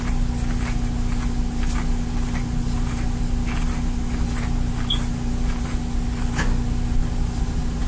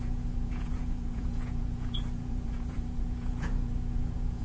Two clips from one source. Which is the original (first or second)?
first